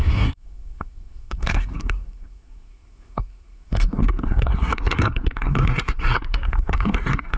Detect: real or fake fake